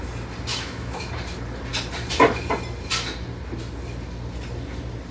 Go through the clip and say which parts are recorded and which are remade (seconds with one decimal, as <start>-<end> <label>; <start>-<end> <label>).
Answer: 0.0-0.5 recorded; 0.5-1.1 remade; 1.1-5.1 recorded